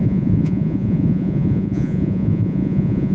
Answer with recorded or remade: remade